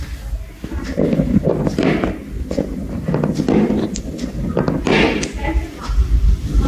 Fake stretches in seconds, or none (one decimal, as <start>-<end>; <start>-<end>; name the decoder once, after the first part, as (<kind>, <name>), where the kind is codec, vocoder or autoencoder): 0.9-4.8 (vocoder, BigVGAN v2)